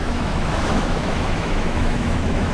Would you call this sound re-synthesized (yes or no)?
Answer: yes